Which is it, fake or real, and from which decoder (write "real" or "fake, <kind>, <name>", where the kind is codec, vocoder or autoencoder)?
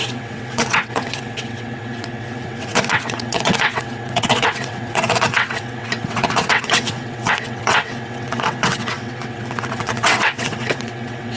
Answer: fake, vocoder, WaveNeXt